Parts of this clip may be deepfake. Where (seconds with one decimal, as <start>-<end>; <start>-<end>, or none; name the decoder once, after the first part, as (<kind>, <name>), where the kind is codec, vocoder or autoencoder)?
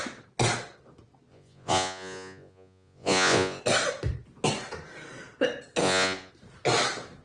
1.3-3.6 (vocoder, Vocos); 5.8-6.3